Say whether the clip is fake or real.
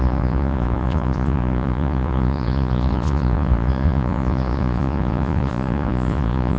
fake